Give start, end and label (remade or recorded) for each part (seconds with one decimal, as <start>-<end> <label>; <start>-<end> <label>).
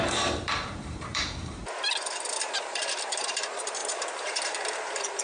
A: 0.0-1.6 remade; 1.6-2.3 recorded; 2.3-5.2 remade